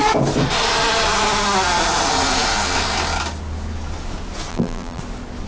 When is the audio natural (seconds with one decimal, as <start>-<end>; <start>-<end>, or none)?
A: 0.0-4.5; 5.0-5.5